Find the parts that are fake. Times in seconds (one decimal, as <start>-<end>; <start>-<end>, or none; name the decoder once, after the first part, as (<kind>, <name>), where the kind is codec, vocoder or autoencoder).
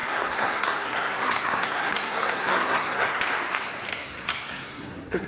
0.0-3.2 (codec, SNAC); 3.9-5.3